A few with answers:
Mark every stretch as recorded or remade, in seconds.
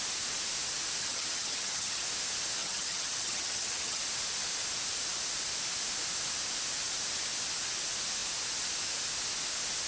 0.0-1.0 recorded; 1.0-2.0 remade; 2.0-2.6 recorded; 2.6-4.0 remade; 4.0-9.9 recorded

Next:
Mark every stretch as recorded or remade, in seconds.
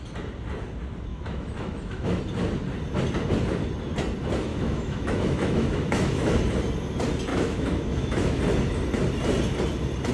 0.0-1.1 recorded; 1.1-2.2 remade; 2.2-4.5 recorded; 4.5-6.3 remade; 6.3-7.3 recorded; 7.3-8.4 remade; 8.4-10.1 recorded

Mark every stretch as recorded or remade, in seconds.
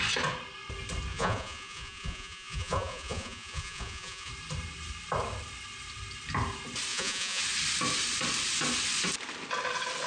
0.0-1.1 recorded; 1.1-4.3 remade; 4.3-6.9 recorded; 6.9-7.4 remade; 7.4-10.1 recorded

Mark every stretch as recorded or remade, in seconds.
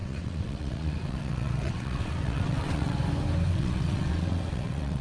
0.0-3.0 remade; 3.0-3.5 recorded; 3.5-5.0 remade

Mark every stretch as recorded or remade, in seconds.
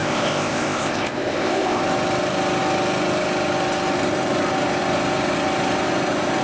0.0-1.8 remade; 1.8-6.4 recorded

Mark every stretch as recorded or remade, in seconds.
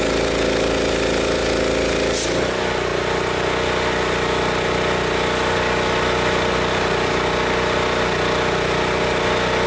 0.0-9.7 recorded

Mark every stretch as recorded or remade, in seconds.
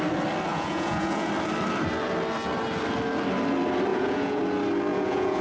0.0-0.5 recorded; 0.5-1.3 remade; 1.3-3.9 recorded; 3.9-4.4 remade; 4.4-4.9 recorded; 4.9-5.4 remade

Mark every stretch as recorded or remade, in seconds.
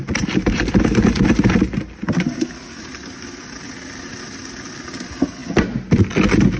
0.0-6.6 recorded